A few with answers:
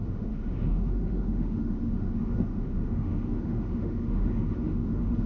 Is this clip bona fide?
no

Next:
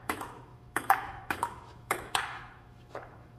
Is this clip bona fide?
no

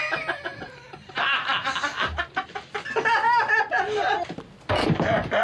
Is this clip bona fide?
yes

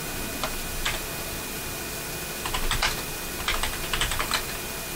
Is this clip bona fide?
yes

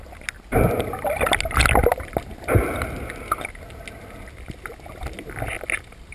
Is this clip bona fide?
yes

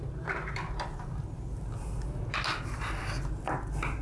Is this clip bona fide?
yes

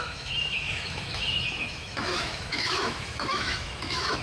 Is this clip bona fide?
no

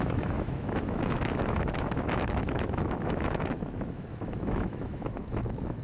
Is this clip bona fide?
no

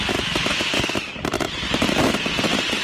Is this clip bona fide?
yes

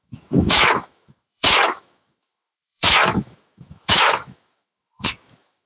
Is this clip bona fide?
no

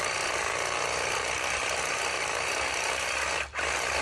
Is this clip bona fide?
yes